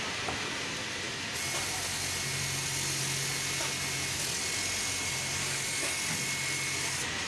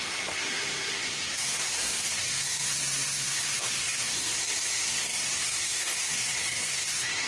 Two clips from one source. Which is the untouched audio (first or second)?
first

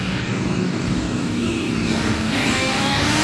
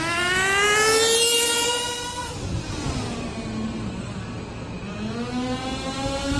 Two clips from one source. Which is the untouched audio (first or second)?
second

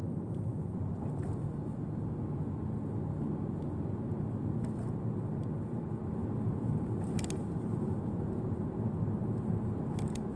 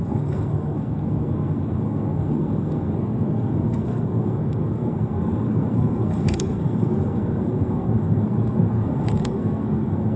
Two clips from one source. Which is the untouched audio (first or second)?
first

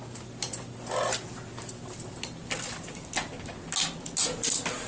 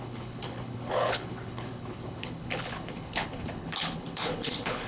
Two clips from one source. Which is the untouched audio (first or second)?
first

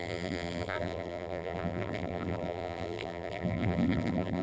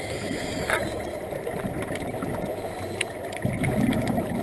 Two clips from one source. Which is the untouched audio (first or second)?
second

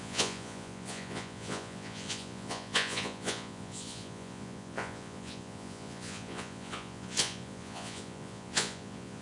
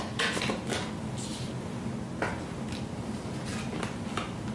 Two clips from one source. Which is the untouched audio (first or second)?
second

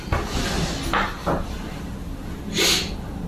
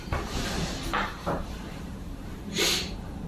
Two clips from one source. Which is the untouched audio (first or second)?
first